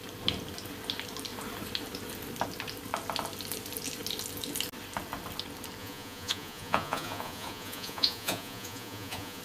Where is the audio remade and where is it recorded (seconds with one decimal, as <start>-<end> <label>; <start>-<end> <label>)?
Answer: 0.0-5.8 recorded; 5.8-9.4 remade

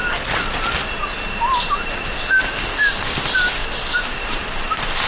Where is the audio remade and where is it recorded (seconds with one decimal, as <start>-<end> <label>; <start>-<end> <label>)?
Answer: 0.0-5.1 recorded

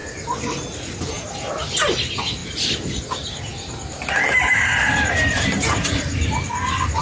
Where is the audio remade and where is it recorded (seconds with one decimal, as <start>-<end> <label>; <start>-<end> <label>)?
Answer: 0.0-7.0 recorded

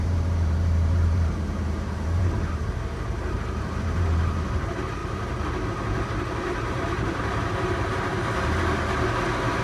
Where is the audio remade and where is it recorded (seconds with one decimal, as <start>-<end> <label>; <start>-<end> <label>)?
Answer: 0.0-5.0 remade; 5.0-6.7 recorded; 6.7-9.6 remade

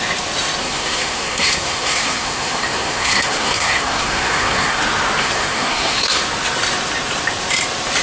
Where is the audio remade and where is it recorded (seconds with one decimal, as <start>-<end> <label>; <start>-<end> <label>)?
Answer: 0.0-0.6 recorded; 0.6-4.8 remade; 4.8-5.2 recorded; 5.2-6.2 remade; 6.2-8.0 recorded

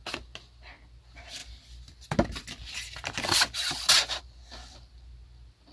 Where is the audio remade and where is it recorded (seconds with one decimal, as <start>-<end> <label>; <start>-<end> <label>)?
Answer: 0.0-5.7 recorded

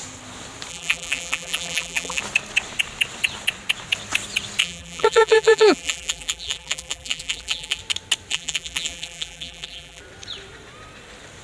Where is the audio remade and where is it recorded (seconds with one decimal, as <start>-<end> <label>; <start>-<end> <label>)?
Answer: 0.0-0.7 recorded; 0.7-2.2 remade; 2.2-4.6 recorded; 4.6-7.8 remade; 7.8-8.3 recorded; 8.3-10.0 remade; 10.0-11.4 recorded

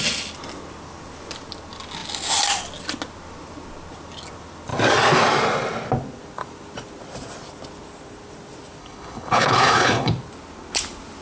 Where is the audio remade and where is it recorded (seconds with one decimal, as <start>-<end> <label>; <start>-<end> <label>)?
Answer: 0.0-8.8 recorded; 8.8-10.1 remade; 10.1-11.2 recorded